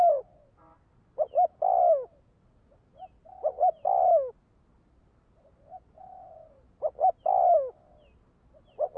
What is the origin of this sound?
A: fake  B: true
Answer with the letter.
B